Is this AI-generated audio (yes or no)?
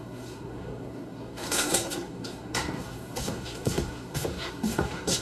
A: yes